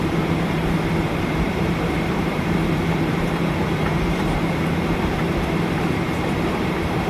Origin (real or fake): fake